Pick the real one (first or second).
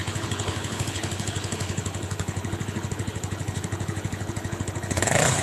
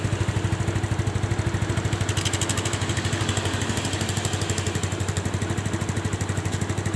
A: second